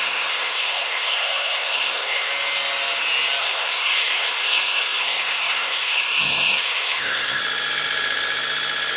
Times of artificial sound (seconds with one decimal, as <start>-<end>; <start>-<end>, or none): 0.0-2.3; 3.4-7.4